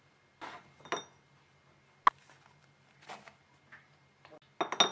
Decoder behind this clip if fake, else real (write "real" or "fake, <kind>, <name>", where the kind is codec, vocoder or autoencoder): real